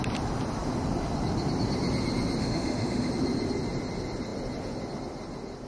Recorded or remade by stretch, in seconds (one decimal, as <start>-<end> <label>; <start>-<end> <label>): 0.0-2.4 recorded; 2.4-3.1 remade; 3.1-5.7 recorded

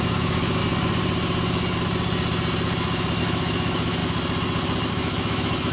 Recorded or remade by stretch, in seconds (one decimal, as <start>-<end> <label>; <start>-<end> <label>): 0.0-0.6 remade; 0.6-3.2 recorded; 3.2-4.0 remade; 4.0-4.9 recorded; 4.9-5.7 remade

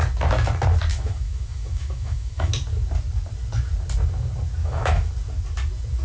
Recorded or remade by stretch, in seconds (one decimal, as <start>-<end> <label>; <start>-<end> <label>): 0.0-0.9 recorded; 0.9-2.5 remade; 2.5-4.6 recorded; 4.6-5.1 remade; 5.1-6.0 recorded

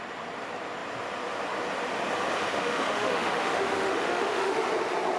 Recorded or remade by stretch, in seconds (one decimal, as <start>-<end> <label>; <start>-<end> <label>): 0.0-2.5 recorded; 2.5-4.6 remade; 4.6-5.2 recorded

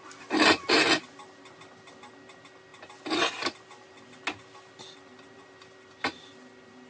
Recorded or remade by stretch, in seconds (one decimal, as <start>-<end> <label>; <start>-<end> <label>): 0.0-6.9 recorded

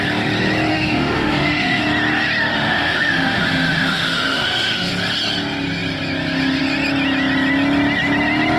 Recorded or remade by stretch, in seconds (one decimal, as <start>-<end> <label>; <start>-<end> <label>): 0.0-0.7 recorded; 0.7-1.8 remade; 1.8-2.5 recorded; 2.5-4.9 remade; 4.9-8.6 recorded

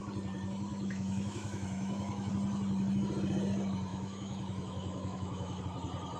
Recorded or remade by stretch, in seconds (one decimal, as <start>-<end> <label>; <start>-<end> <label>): 0.0-0.7 recorded; 0.7-2.3 remade; 2.3-3.9 recorded; 3.9-5.6 remade; 5.6-6.2 recorded

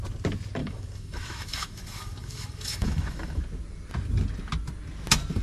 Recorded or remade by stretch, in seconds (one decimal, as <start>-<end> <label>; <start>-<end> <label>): 0.0-0.6 recorded; 0.6-3.4 remade; 3.4-5.4 recorded